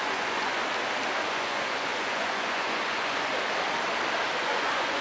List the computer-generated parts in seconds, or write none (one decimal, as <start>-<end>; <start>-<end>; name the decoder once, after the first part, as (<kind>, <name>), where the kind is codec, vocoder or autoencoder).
0.0-0.6 (vocoder, Vocos); 1.3-3.3; 4.4-5.0